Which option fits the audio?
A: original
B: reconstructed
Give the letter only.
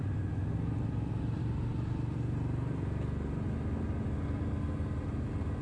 A